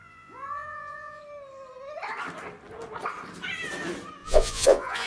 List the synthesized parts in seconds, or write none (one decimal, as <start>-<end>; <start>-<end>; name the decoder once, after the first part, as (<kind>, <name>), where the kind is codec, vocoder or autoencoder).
0.0-1.2 (vocoder, Vocos); 4.2-5.1